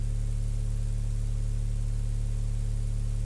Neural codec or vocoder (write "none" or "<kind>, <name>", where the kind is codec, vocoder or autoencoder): none